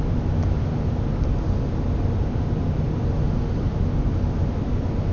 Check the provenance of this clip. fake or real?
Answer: real